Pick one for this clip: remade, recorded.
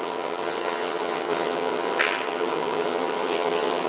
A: remade